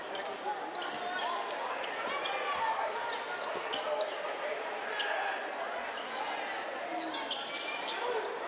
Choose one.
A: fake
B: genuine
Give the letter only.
B